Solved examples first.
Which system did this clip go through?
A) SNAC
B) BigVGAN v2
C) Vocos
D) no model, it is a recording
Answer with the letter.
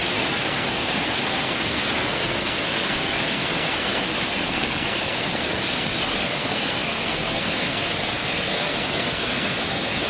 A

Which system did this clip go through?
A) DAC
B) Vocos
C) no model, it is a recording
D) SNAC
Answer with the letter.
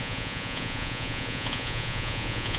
B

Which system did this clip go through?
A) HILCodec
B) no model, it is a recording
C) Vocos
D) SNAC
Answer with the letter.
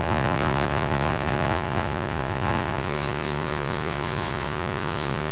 C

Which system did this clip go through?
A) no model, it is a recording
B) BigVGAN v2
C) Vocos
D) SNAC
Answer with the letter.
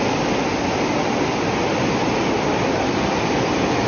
A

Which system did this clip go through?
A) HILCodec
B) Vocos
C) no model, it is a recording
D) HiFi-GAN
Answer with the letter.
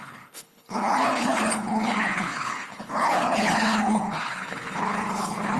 A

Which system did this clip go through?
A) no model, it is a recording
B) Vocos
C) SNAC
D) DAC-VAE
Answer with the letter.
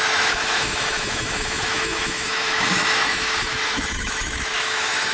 D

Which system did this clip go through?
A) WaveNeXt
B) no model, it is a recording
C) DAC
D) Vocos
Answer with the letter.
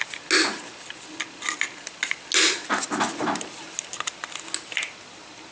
B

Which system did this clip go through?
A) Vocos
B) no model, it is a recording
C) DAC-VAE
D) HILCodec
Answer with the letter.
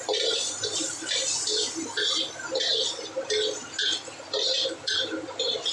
B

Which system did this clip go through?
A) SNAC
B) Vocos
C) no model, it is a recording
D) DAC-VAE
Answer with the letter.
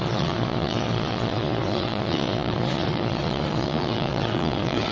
B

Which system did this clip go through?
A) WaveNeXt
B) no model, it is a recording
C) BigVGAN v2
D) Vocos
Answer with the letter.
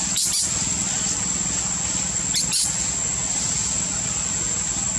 B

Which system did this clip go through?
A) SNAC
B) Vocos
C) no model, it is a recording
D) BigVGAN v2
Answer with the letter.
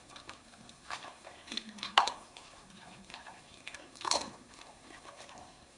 A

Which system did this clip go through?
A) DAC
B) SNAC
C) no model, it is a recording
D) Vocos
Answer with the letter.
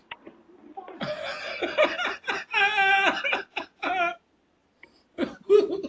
C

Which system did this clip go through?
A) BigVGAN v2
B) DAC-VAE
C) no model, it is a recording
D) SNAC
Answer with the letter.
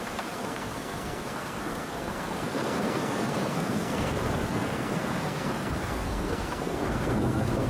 D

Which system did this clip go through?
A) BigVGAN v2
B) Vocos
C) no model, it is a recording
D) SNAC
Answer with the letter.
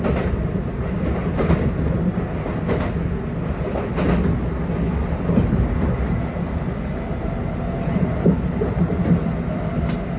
C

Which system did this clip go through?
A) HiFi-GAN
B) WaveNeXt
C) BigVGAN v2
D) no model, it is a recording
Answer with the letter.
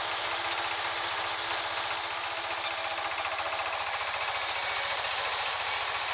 D